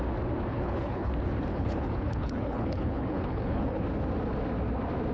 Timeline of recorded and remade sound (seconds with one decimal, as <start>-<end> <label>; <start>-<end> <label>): 0.0-0.5 recorded; 0.5-1.1 remade; 1.1-1.5 recorded; 1.5-3.8 remade; 3.8-5.1 recorded